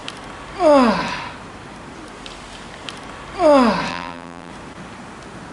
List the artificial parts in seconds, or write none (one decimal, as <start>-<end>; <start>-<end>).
3.9-4.5

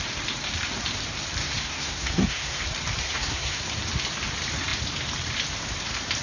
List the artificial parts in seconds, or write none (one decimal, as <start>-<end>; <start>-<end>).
1.4-2.6; 3.0-3.6

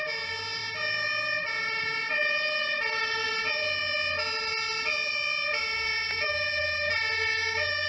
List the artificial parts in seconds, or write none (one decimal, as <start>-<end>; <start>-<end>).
5.6-6.9